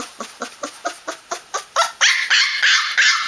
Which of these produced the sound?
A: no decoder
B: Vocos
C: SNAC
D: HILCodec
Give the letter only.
A